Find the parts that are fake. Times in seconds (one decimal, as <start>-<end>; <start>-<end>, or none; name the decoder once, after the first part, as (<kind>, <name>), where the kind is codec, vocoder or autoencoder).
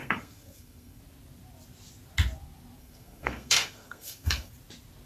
0.0-1.0 (codec, SNAC); 2.8-4.5